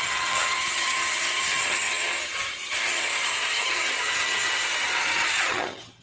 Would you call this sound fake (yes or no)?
yes